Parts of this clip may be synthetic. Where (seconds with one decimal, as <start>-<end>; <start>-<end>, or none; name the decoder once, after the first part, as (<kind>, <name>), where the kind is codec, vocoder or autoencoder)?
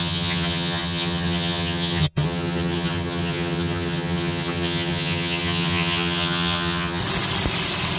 0.0-7.0 (vocoder, HiFi-GAN)